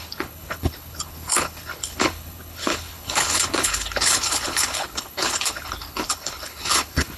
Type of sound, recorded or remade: remade